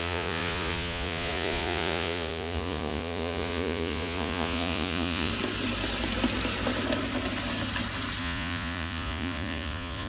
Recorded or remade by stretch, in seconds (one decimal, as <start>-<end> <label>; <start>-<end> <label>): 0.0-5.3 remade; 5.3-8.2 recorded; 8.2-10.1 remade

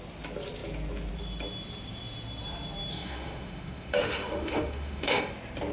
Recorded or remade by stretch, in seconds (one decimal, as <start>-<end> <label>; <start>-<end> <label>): 0.0-2.9 recorded; 2.9-5.2 remade; 5.2-5.7 recorded

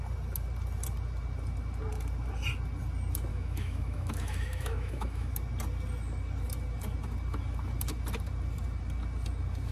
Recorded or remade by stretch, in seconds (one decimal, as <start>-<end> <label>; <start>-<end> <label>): 0.0-3.3 recorded; 3.3-5.3 remade; 5.3-9.7 recorded